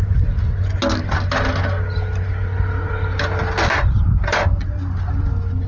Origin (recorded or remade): recorded